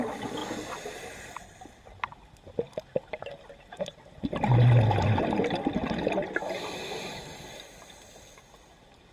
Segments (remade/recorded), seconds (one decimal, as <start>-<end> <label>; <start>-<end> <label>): 0.0-9.1 recorded